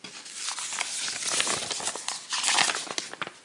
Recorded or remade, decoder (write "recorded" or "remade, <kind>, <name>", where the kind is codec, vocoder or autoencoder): recorded